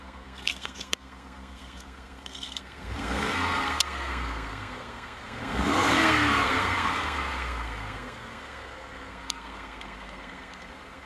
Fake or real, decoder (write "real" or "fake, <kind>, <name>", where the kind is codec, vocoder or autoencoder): fake, codec, SNAC